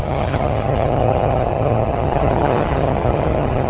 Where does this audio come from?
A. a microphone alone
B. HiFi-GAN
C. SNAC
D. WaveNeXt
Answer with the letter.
B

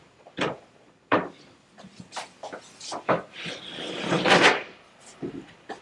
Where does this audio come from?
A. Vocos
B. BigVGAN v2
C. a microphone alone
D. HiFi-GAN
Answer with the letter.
B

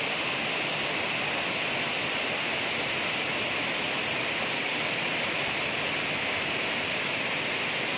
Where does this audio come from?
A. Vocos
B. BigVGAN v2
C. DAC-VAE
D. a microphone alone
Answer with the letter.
D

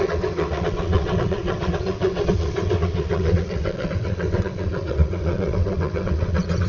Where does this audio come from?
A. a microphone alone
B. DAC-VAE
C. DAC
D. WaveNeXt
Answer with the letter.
D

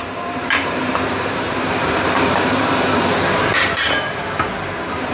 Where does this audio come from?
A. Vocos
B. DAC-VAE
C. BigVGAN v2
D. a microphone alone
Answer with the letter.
C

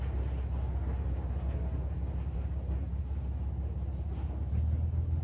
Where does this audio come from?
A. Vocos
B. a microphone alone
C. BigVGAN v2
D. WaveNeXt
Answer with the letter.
B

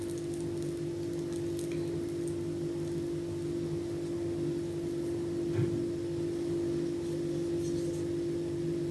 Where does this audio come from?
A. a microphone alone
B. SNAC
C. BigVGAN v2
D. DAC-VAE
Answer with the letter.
A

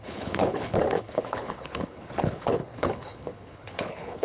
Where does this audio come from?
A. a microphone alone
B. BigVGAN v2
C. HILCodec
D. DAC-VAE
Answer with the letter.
C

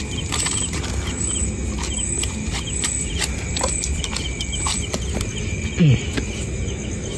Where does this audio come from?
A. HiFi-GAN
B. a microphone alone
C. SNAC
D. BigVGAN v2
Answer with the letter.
B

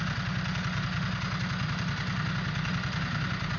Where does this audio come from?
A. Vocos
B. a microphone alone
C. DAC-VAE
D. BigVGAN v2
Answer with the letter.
B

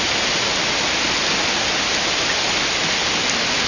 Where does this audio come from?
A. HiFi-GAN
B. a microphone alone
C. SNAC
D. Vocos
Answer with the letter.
B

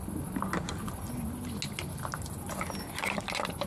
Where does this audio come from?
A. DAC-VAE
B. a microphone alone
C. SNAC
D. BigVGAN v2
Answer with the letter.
B